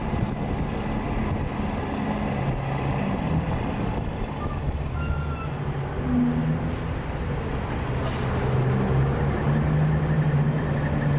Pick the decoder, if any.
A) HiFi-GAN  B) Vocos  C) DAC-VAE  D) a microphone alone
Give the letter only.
D